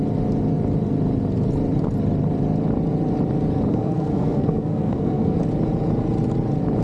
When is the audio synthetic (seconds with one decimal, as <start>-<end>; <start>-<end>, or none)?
3.7-5.4